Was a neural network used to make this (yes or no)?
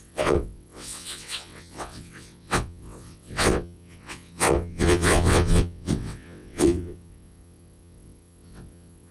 yes